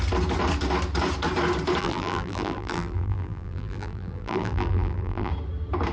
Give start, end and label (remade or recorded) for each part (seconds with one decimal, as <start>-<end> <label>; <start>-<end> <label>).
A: 0.0-1.8 recorded; 1.8-5.3 remade; 5.3-5.9 recorded